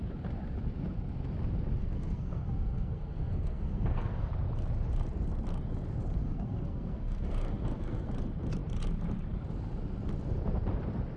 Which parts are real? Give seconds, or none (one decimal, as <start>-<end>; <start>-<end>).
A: 0.0-1.8; 4.3-6.2; 8.1-11.2